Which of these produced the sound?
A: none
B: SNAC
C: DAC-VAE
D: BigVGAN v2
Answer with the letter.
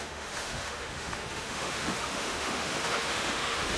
C